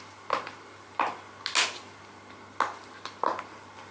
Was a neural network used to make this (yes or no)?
no